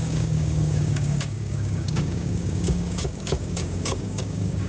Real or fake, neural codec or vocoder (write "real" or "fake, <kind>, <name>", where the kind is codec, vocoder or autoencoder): fake, codec, DAC